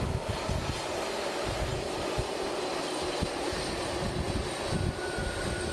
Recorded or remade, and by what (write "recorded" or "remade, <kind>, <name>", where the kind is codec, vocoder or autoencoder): recorded